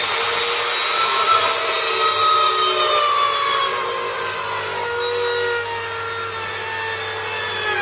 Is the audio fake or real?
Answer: real